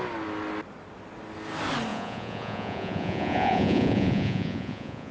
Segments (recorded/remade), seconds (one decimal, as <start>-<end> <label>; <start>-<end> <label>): 0.0-1.9 recorded; 1.9-5.1 remade